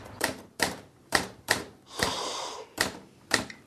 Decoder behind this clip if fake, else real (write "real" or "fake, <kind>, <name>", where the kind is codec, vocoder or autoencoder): fake, vocoder, BigVGAN v2